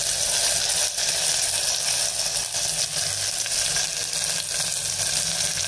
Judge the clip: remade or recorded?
recorded